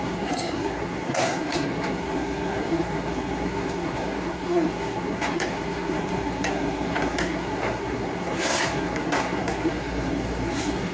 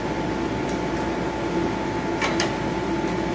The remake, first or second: first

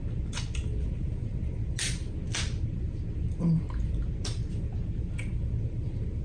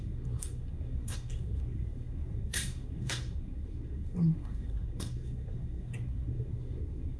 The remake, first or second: second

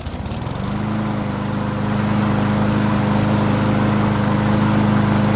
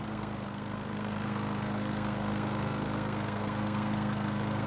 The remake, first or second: second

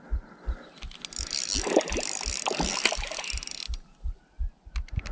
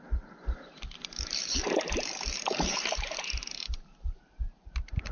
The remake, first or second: second